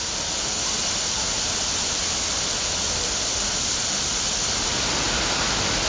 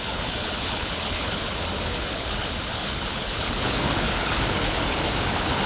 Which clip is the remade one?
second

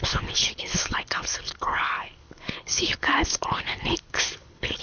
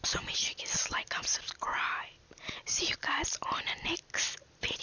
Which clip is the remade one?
first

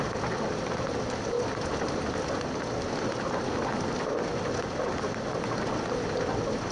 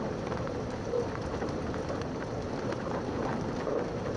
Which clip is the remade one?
second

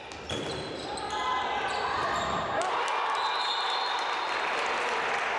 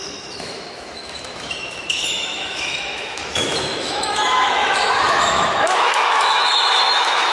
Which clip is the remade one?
second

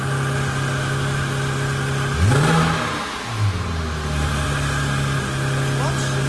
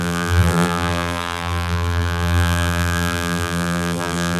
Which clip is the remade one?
second